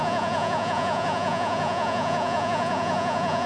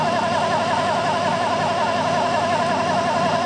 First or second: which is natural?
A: second